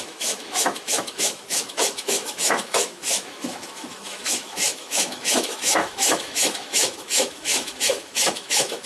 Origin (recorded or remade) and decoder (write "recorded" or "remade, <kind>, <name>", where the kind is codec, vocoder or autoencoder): remade, autoencoder, DAC-VAE